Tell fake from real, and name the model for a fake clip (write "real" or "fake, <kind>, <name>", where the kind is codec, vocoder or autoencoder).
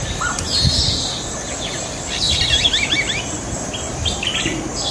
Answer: real